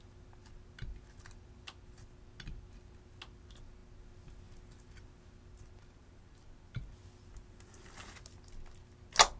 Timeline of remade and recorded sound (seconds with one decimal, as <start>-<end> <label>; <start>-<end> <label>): 0.0-9.4 recorded